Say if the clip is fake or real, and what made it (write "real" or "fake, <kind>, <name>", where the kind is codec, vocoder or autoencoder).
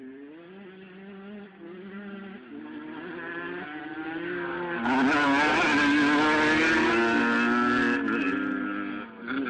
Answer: real